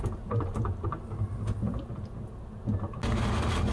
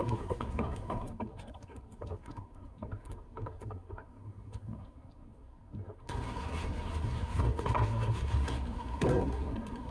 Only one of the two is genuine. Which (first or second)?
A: first